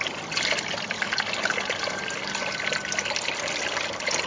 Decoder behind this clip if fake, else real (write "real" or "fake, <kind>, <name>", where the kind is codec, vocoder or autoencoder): real